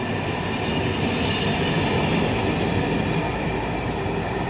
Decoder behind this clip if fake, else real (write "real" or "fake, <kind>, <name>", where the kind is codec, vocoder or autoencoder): real